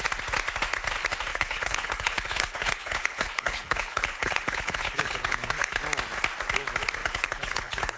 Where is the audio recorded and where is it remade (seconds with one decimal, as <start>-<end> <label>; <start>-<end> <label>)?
0.0-1.3 recorded; 1.3-5.8 remade; 5.8-7.0 recorded; 7.0-8.0 remade